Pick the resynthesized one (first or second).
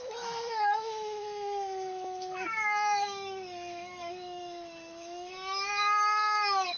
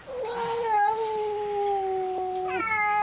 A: first